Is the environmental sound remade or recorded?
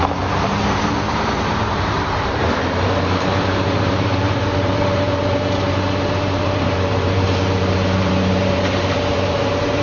remade